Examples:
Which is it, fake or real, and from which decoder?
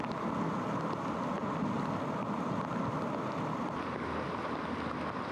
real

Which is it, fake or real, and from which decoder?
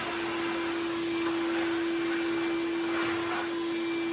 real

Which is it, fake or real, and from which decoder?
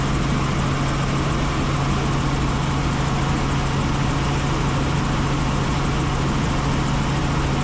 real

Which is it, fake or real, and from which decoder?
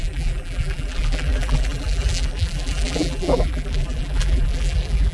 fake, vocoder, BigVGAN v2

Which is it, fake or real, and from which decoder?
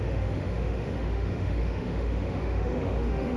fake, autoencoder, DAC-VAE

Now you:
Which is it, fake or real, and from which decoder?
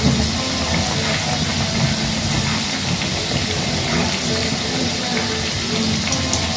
real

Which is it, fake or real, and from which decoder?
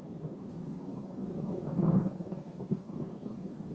fake, codec, DAC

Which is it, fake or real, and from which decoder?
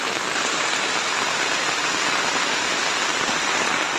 real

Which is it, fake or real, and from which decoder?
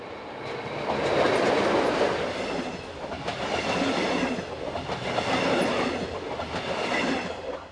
real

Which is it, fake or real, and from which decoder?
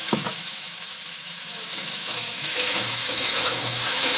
fake, autoencoder, DAC-VAE